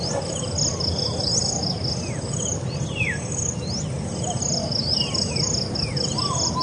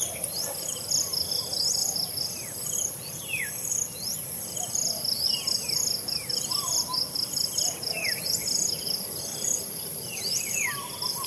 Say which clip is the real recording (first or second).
first